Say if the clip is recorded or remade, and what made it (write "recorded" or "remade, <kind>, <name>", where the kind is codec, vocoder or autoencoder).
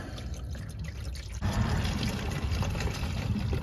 recorded